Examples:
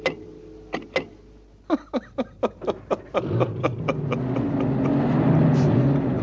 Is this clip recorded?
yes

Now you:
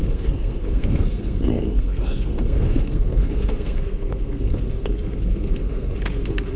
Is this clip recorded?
no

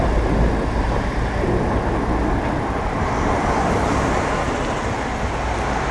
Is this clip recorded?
yes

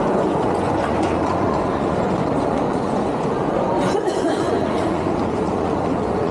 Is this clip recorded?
no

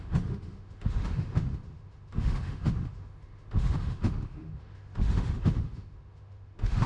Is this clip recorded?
no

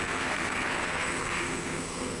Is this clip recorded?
no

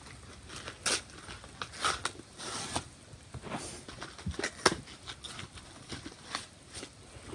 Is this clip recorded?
yes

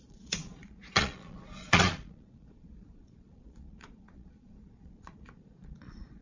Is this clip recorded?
no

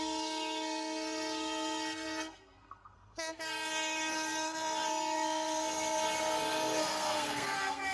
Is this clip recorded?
no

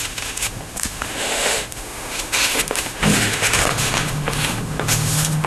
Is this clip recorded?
no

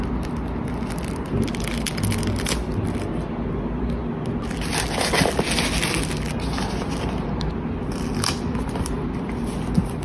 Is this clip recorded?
yes